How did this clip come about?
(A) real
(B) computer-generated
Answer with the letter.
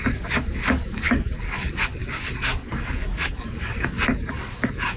B